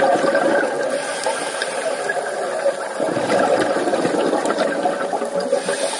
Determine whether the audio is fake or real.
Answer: real